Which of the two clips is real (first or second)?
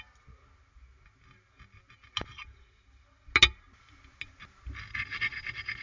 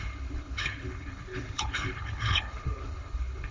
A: first